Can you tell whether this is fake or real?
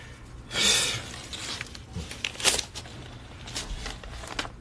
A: real